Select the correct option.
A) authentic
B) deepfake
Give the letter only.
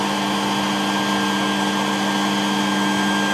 A